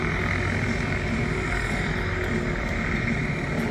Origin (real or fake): real